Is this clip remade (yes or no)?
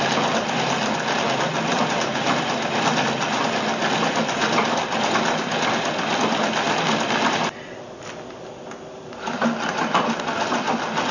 no